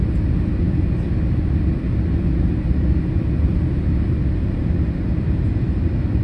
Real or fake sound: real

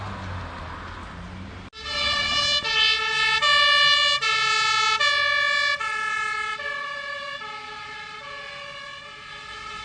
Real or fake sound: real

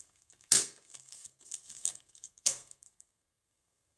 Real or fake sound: fake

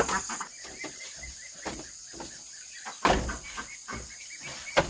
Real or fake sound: real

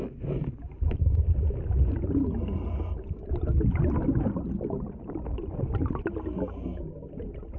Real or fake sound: real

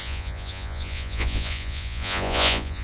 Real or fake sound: fake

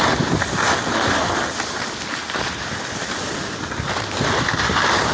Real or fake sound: real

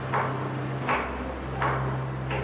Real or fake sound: real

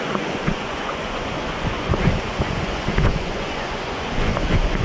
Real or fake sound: fake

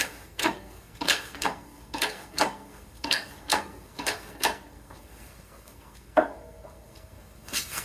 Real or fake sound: fake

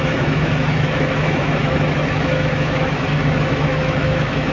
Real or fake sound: fake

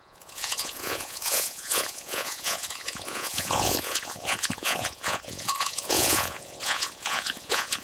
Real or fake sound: fake